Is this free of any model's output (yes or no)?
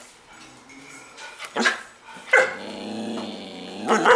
yes